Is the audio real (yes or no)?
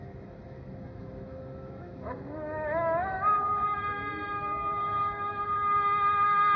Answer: no